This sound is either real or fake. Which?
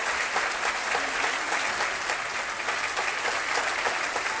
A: real